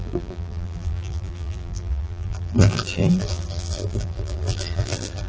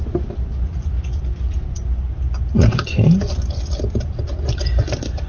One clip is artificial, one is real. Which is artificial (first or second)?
first